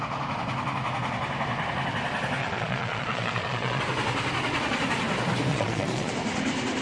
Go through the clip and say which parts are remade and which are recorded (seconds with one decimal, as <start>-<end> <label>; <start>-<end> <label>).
0.0-2.4 recorded; 2.4-3.8 remade; 3.8-5.5 recorded; 5.5-6.1 remade; 6.1-6.8 recorded